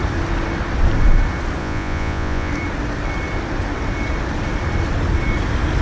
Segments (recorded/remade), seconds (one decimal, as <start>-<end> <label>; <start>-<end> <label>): 0.0-1.6 recorded; 1.6-2.5 remade; 2.5-5.8 recorded